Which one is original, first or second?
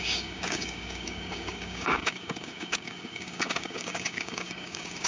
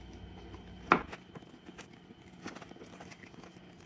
second